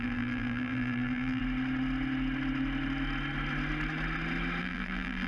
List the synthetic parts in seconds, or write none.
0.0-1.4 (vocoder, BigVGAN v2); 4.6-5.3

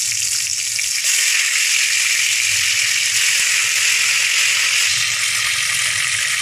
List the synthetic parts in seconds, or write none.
none

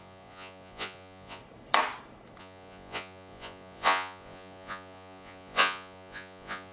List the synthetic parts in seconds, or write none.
0.0-1.4 (vocoder, Vocos); 2.4-6.7

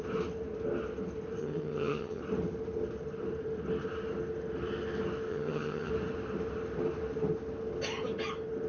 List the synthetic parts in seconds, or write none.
1.4-2.2 (vocoder, HiFi-GAN); 5.3-5.9

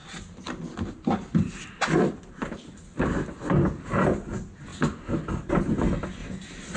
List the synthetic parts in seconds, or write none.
none

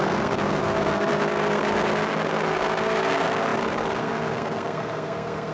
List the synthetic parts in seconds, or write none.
0.0-5.5 (codec, SNAC)

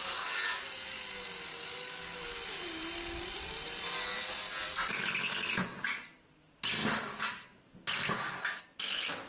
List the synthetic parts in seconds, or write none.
0.0-0.6 (codec, DAC); 1.5-2.2

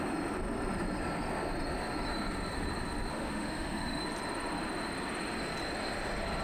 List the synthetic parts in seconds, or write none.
3.1-4.0 (autoencoder, DAC-VAE)